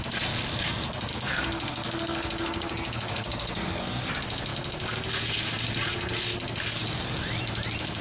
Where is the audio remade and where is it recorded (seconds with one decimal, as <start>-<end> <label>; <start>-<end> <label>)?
0.0-1.1 recorded; 1.1-4.1 remade; 4.1-8.0 recorded